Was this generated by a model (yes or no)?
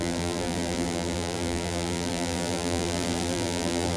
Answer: yes